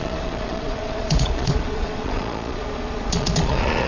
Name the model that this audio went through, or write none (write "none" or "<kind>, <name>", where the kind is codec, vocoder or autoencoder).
vocoder, Vocos